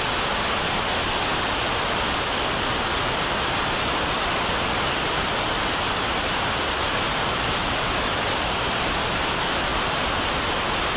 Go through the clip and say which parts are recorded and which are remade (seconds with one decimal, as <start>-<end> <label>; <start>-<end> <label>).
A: 0.0-11.0 recorded